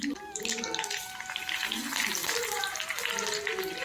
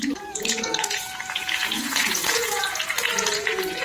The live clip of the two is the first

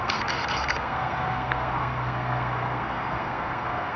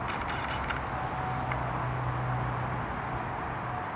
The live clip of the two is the second